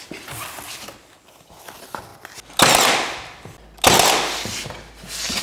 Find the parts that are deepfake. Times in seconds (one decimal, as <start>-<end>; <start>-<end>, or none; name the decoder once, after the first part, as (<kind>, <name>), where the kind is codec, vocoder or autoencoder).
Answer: none